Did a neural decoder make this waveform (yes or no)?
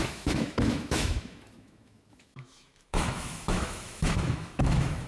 yes